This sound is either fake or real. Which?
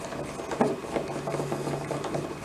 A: real